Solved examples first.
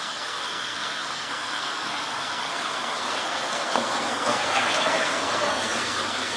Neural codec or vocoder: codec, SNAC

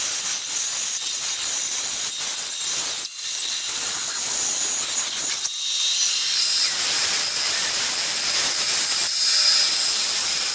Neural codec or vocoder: vocoder, BigVGAN v2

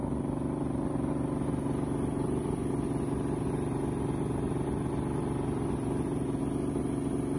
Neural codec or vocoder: none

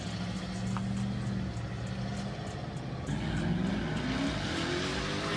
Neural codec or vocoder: none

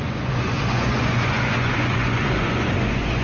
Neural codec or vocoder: vocoder, Vocos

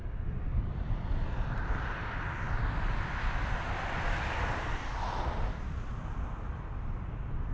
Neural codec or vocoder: none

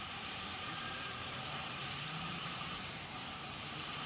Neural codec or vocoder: vocoder, BigVGAN v2